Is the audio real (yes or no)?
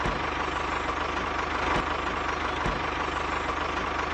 yes